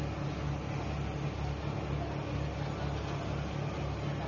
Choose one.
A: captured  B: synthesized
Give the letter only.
A